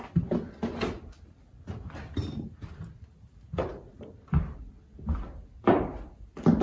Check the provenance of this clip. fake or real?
real